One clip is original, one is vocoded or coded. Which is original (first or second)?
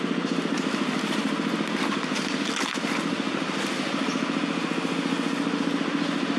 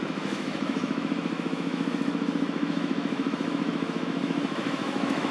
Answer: first